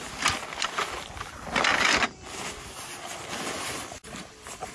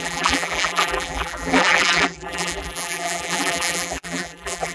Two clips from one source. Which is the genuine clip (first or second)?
first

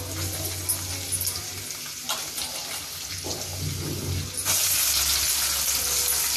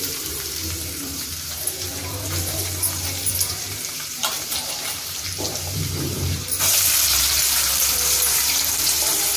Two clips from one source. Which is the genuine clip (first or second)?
first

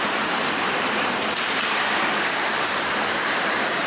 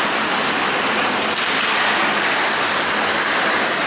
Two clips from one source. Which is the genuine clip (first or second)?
second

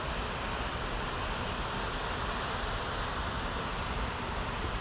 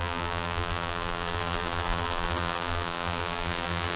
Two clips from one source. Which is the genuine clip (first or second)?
first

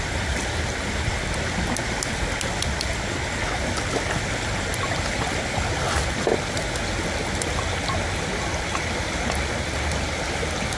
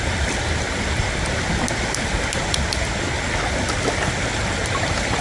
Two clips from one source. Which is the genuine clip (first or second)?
first